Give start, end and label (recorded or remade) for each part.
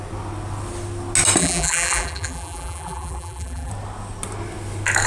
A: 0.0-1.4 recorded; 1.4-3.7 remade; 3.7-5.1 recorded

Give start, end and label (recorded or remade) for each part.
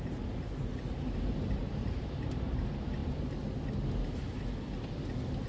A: 0.0-1.6 recorded; 1.6-2.1 remade; 2.1-5.5 recorded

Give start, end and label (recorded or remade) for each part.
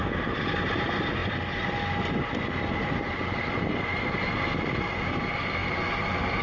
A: 0.0-6.4 recorded